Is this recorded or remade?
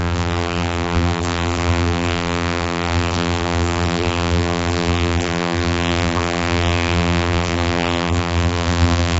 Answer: remade